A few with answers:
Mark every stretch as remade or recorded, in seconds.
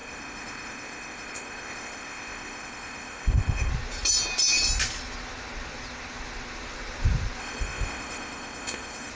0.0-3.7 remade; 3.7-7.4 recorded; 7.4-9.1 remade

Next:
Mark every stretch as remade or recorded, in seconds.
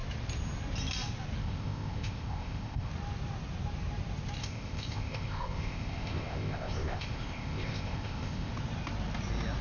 0.0-1.4 recorded; 1.4-2.9 remade; 2.9-4.4 recorded; 4.4-8.5 remade; 8.5-9.6 recorded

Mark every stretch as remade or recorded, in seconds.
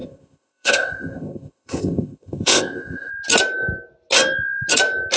0.0-3.1 remade; 3.1-5.2 recorded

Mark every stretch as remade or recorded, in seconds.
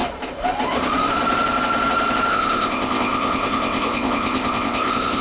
0.0-2.3 recorded; 2.3-5.2 remade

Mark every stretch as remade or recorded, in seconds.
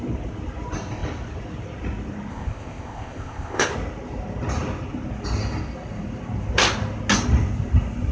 0.0-2.3 recorded; 2.3-3.7 remade; 3.7-8.1 recorded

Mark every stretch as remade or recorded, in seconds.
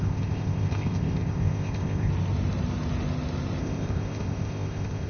0.0-2.1 remade; 2.1-3.6 recorded; 3.6-5.1 remade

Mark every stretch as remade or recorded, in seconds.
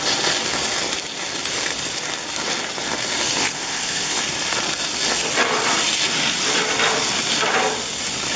0.0-3.4 recorded; 3.4-4.2 remade; 4.2-8.4 recorded